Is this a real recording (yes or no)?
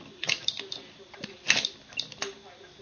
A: yes